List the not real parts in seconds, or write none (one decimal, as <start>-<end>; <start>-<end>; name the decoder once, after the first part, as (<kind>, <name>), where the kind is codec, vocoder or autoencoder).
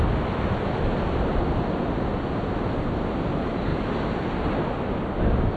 none